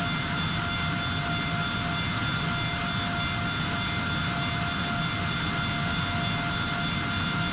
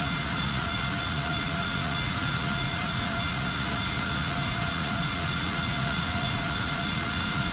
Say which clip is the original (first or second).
first